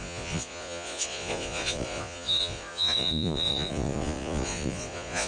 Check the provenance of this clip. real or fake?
fake